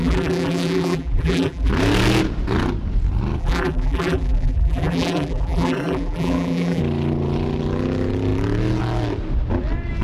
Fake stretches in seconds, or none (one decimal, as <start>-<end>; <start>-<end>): 0.0-1.7; 3.4-6.8